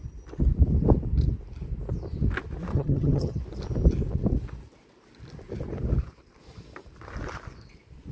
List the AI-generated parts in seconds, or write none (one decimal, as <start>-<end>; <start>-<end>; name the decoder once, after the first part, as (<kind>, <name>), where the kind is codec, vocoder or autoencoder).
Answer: 2.7-3.4 (vocoder, HiFi-GAN)